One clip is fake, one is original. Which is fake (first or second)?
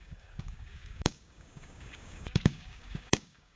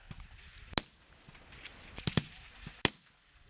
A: first